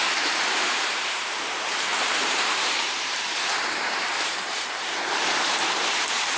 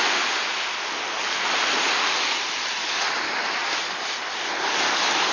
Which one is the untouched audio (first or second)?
second